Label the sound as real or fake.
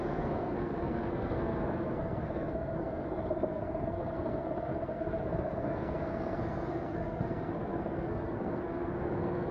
fake